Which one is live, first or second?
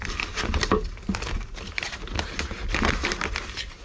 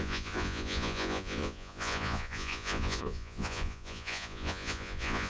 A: first